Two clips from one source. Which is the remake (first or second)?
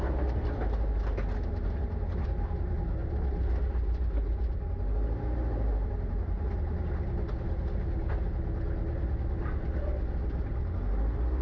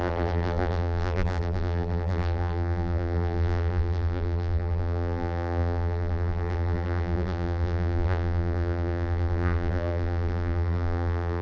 second